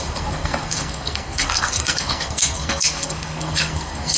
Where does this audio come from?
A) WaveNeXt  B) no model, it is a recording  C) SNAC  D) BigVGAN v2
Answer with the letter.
C